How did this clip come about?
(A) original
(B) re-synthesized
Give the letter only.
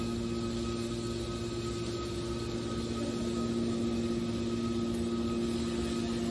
A